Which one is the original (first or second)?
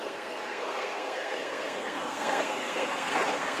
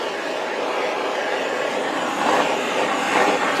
second